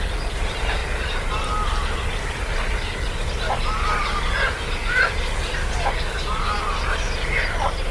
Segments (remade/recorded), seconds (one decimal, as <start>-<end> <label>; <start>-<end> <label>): 0.0-5.6 recorded; 5.6-6.6 remade; 6.6-7.9 recorded